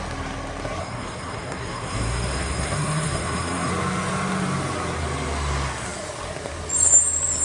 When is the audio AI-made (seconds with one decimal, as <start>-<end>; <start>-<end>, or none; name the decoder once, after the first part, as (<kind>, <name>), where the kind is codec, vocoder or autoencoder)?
0.8-3.7 (codec, SNAC)